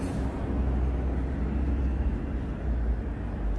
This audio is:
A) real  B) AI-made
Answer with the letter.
A